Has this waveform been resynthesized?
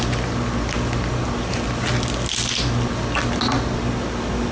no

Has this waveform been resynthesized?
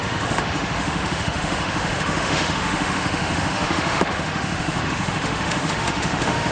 yes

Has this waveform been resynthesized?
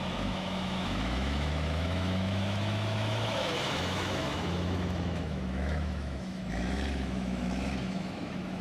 yes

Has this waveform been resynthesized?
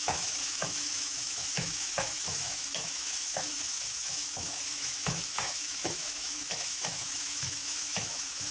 yes